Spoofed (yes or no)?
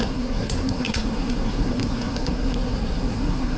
yes